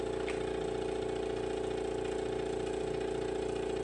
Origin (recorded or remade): recorded